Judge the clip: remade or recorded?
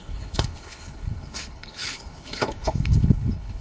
remade